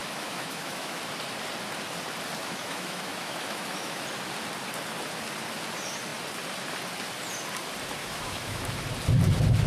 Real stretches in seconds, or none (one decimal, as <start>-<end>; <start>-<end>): 1.0-2.4; 4.0-8.0; 8.6-9.7